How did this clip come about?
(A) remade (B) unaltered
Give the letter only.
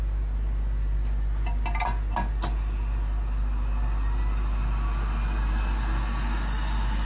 B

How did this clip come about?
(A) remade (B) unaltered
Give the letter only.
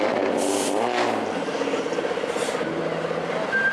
B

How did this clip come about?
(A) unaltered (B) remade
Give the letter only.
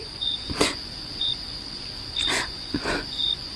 B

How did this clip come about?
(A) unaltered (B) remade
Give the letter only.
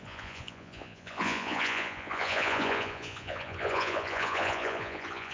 B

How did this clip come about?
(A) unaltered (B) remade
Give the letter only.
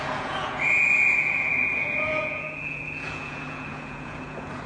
B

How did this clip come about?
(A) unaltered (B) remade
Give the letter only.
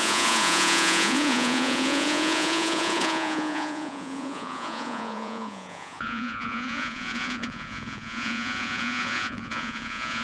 B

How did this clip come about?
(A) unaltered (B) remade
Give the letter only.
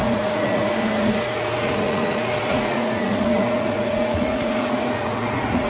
B